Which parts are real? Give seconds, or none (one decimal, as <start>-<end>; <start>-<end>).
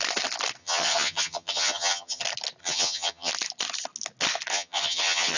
0.0-0.6; 2.2-2.6; 3.3-4.5